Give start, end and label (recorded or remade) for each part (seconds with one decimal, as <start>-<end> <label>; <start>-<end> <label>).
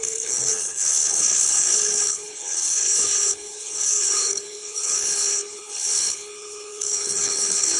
0.0-7.8 remade